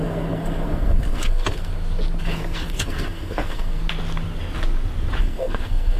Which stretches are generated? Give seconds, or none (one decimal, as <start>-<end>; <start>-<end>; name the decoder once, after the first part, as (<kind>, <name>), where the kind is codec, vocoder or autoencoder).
0.0-1.7 (codec, SNAC); 2.2-3.8; 5.2-6.0